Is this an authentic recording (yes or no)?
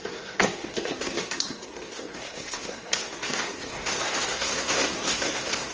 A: no